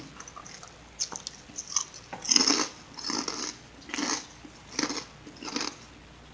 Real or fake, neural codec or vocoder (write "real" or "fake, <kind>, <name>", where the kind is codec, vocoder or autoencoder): real